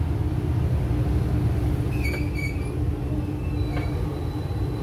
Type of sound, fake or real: real